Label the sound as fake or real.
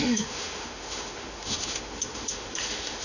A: fake